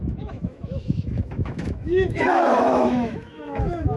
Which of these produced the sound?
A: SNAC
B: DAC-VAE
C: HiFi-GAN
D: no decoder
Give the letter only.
B